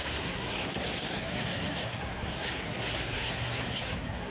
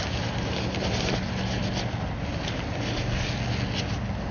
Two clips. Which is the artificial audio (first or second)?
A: first